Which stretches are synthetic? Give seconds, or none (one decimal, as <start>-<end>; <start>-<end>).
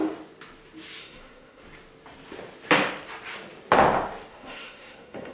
1.0-1.6; 4.3-5.3